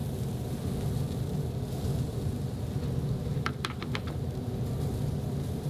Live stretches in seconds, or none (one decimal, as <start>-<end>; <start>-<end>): 0.0-5.7